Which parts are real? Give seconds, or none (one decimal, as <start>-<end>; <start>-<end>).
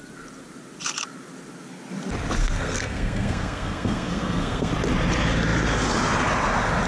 0.0-2.4; 4.7-6.9